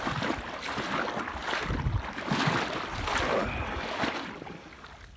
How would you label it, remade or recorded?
recorded